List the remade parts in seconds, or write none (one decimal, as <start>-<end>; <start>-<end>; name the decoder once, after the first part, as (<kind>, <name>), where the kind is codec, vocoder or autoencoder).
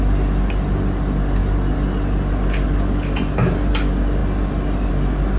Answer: none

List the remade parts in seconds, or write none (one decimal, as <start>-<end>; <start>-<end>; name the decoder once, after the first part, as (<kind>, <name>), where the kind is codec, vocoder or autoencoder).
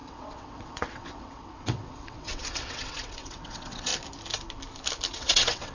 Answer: 0.0-3.9 (vocoder, WaveNeXt); 5.1-5.7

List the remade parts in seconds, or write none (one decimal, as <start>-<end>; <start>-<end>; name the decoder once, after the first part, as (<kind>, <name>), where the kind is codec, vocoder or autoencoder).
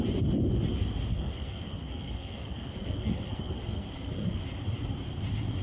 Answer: 1.1-4.4 (codec, SNAC)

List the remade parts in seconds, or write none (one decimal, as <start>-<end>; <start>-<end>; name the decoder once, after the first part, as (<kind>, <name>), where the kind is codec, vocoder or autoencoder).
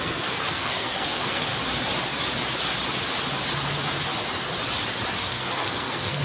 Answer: 0.0-1.5 (codec, SNAC); 5.2-6.2